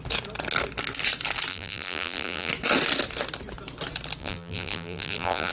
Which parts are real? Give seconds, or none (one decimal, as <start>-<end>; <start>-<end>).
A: 0.0-1.5; 2.5-4.2